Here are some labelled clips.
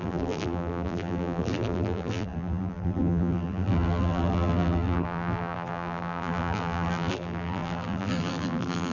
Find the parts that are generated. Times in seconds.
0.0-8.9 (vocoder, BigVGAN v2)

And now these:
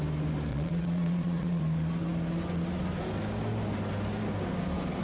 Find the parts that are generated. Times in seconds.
0.5-1.6 (vocoder, Vocos)